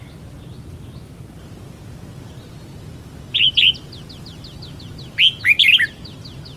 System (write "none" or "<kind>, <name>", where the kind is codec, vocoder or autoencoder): none